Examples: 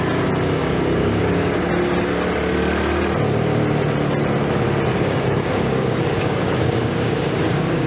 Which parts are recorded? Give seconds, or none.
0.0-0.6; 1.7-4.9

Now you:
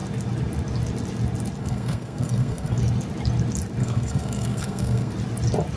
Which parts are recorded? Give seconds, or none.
0.0-1.6; 2.8-3.8; 5.1-5.8

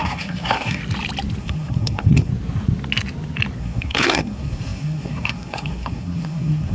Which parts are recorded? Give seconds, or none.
0.8-1.4; 2.3-3.6